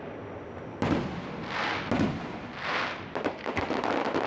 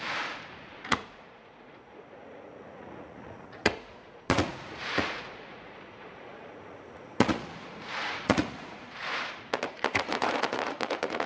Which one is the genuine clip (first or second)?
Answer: first